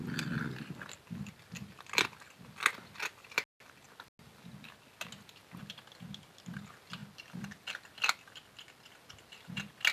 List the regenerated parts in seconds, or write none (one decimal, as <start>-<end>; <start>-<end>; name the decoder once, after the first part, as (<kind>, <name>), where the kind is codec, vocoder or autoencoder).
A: none